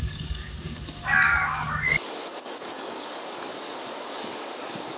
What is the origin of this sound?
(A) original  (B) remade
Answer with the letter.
B